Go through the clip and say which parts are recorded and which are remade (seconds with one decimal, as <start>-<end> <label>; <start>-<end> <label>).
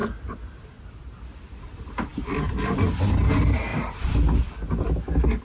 0.0-2.1 recorded; 2.1-2.8 remade; 2.8-3.7 recorded; 3.7-4.7 remade; 4.7-5.4 recorded